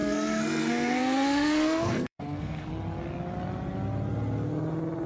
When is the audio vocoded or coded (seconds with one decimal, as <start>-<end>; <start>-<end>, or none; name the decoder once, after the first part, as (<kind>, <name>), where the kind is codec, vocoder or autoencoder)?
0.0-2.7 (codec, SNAC)